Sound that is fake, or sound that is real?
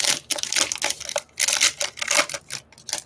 real